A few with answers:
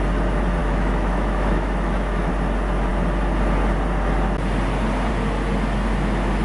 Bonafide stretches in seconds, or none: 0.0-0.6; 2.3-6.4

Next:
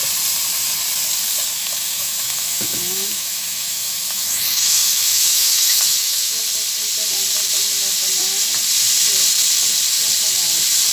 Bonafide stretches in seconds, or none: 0.0-1.6; 6.4-10.9

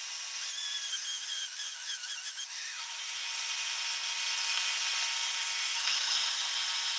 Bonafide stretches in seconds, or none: 0.0-0.9; 3.3-5.6; 6.4-7.0

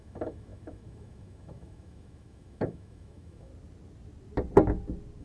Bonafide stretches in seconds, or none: 3.5-5.2